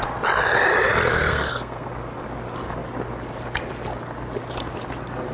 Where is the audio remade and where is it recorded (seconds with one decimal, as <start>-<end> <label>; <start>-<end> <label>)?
0.0-1.3 recorded; 1.3-1.9 remade; 1.9-5.3 recorded